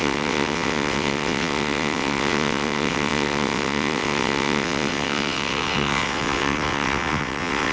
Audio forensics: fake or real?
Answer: fake